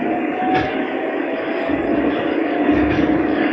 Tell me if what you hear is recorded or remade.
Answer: remade